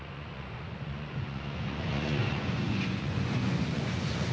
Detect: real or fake fake